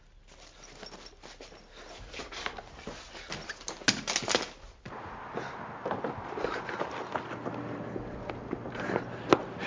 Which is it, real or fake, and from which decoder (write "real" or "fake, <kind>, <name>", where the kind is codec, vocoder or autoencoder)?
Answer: real